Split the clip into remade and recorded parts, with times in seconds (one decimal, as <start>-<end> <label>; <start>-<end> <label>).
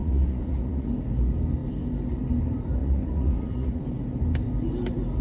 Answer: 0.0-0.9 remade; 0.9-2.8 recorded; 2.8-3.8 remade; 3.8-5.2 recorded